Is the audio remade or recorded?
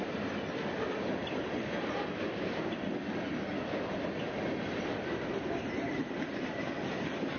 recorded